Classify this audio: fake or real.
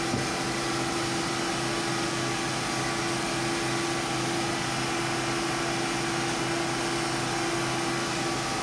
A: real